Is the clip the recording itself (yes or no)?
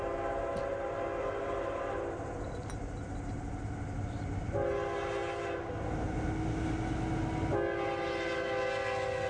yes